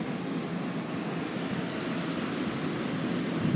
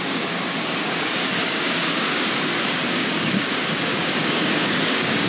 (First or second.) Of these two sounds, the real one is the first